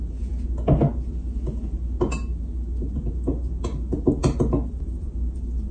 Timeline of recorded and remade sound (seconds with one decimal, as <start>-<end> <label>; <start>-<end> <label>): 0.0-5.7 recorded

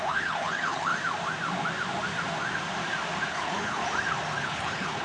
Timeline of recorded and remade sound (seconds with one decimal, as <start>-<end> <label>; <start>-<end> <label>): 0.0-0.9 remade; 0.9-3.3 recorded; 3.3-3.8 remade; 3.8-4.4 recorded; 4.4-5.0 remade